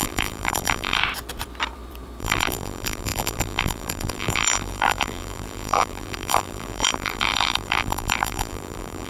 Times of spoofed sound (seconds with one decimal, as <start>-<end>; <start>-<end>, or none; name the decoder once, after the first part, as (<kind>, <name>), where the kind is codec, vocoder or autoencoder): 0.0-1.0 (vocoder, BigVGAN v2); 2.2-9.1